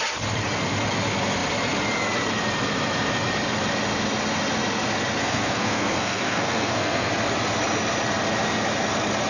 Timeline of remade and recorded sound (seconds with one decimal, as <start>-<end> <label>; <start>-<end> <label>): 0.0-5.2 recorded; 5.2-7.1 remade; 7.1-9.3 recorded